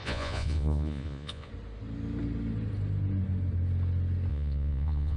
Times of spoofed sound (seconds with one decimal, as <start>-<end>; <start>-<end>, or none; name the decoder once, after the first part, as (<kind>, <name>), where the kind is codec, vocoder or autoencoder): 0.0-1.5 (vocoder, Vocos); 4.3-5.2